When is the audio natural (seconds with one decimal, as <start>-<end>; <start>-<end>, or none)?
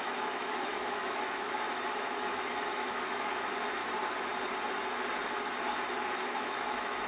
3.8-5.9